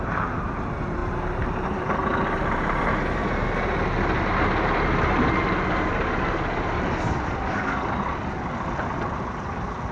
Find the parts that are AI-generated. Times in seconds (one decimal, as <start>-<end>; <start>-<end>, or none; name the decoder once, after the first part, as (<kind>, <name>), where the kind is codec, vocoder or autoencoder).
none